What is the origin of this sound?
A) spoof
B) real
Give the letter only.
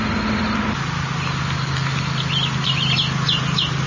B